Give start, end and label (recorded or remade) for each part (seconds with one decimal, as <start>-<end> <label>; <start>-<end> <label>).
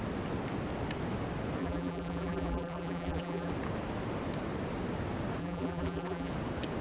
0.0-1.6 recorded; 1.6-3.5 remade; 3.5-5.4 recorded; 5.4-6.3 remade; 6.3-6.8 recorded